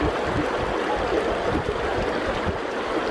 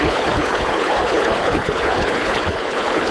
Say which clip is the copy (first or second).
second